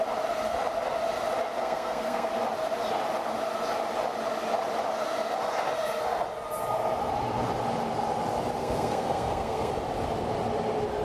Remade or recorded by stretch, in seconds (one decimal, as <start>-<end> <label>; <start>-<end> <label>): 0.0-1.6 recorded; 1.6-2.3 remade; 2.3-8.6 recorded; 8.6-9.7 remade; 9.7-11.0 recorded